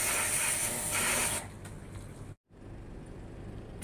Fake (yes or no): no